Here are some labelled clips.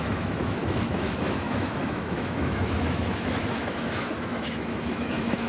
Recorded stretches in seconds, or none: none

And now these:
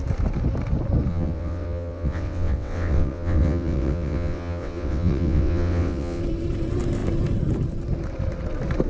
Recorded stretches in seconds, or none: 0.0-1.1; 6.2-8.9

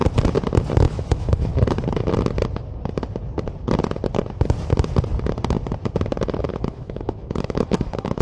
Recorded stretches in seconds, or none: 0.0-0.9; 1.5-6.4

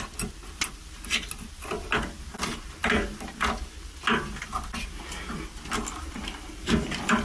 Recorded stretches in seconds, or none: 0.0-7.2

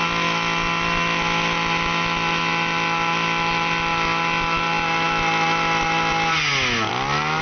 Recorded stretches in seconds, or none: 0.0-7.4

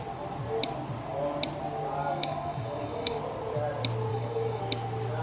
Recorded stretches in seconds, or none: 0.0-2.0; 3.2-4.1; 4.6-5.2

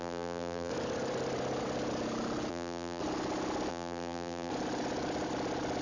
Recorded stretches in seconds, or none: 0.7-2.5; 3.0-3.7; 4.5-5.8